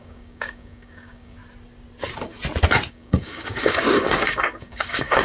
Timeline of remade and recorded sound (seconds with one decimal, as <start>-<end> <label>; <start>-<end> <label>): 0.0-1.4 remade; 1.4-2.9 recorded; 2.9-5.2 remade